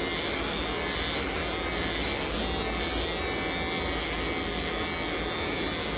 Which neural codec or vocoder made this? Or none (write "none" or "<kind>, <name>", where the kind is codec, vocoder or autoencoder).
none